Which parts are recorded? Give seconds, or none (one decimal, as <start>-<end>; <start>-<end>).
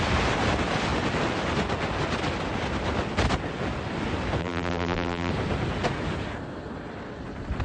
0.0-4.4; 5.3-7.6